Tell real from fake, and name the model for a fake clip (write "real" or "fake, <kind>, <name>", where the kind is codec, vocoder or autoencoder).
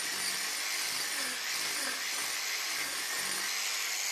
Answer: real